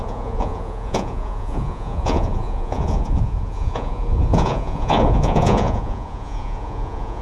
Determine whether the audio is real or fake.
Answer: fake